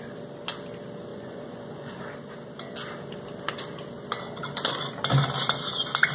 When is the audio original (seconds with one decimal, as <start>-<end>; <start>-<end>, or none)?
0.0-1.1; 1.9-6.1